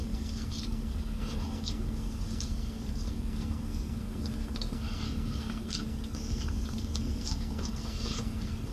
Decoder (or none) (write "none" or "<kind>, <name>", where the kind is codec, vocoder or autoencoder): codec, SNAC